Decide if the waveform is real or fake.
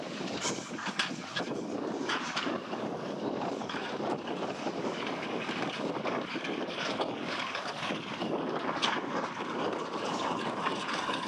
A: fake